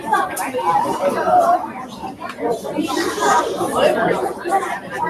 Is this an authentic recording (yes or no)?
no